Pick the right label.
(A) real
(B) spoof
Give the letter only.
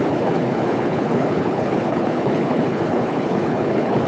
B